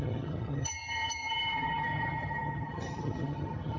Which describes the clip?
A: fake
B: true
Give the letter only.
A